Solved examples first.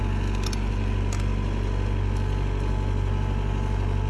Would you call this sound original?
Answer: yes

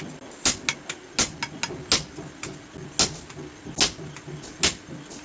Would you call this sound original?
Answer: yes